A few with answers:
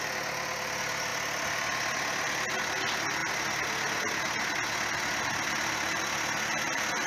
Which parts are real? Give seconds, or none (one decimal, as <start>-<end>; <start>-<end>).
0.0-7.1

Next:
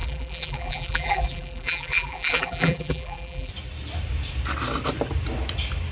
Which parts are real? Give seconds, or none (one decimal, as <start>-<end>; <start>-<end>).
3.5-5.9

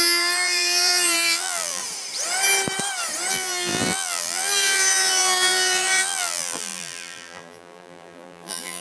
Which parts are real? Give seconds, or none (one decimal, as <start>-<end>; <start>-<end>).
1.8-3.3

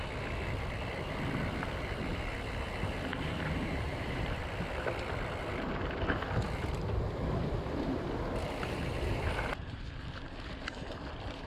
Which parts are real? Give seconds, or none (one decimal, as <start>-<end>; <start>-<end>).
0.0-3.1; 4.4-8.4; 9.8-11.5